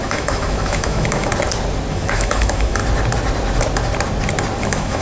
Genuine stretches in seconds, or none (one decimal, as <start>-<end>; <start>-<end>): 1.3-1.9; 2.8-4.6